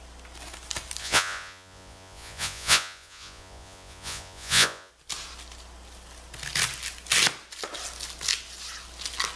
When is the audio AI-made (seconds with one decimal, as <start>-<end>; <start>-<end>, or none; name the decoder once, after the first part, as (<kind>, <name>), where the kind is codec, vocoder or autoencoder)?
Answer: 1.0-4.9 (vocoder, Vocos)